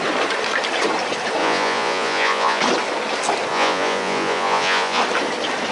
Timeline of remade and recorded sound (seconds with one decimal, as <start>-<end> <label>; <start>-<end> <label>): 0.0-1.4 recorded; 1.4-2.6 remade; 2.6-3.5 recorded; 3.5-5.0 remade; 5.0-5.7 recorded